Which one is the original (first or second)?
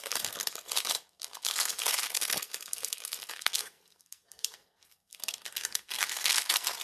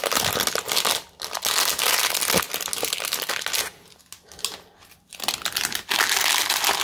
second